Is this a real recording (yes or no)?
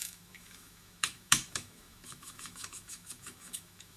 no